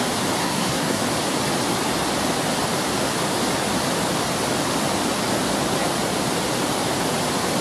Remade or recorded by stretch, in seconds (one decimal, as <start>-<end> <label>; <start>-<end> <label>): 0.0-0.4 recorded; 0.4-1.0 remade; 1.0-7.6 recorded